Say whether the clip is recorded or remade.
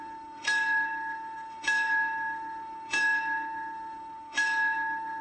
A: remade